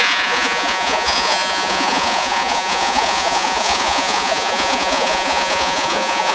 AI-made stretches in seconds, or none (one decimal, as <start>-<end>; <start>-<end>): 0.0-6.3